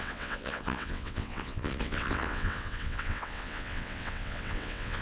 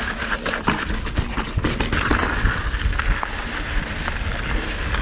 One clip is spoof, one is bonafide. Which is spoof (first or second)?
first